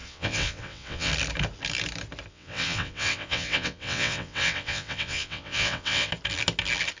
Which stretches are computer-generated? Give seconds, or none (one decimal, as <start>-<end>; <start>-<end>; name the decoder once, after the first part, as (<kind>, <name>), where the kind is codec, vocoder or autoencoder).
0.0-1.1 (vocoder, WaveNeXt); 2.3-6.1